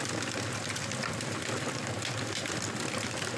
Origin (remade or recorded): recorded